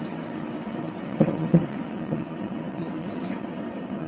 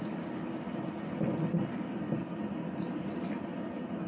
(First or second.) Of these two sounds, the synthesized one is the first